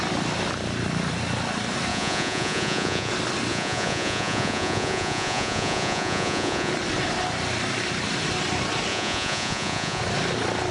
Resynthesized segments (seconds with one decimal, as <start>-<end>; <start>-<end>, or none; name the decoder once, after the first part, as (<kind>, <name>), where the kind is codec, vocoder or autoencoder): 1.9-3.1 (vocoder, Vocos); 3.5-6.7; 8.9-10.0